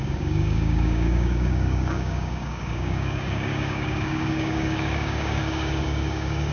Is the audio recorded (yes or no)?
no